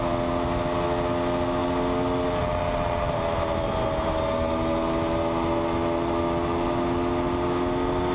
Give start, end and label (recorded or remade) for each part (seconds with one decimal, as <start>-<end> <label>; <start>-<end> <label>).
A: 0.0-8.1 recorded

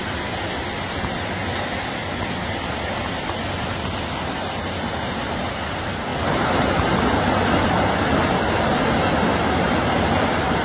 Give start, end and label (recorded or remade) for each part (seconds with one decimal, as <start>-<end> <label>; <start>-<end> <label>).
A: 0.0-10.6 recorded

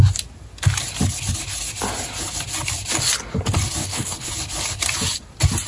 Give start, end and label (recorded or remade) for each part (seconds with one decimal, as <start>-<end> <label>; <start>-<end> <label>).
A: 0.0-3.8 recorded; 3.8-4.3 remade; 4.3-5.7 recorded